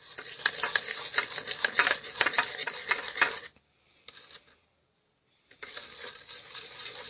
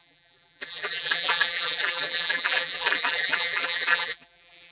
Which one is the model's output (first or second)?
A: second